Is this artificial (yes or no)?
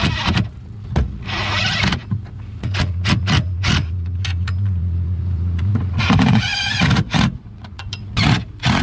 yes